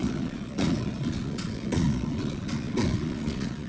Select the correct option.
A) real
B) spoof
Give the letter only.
B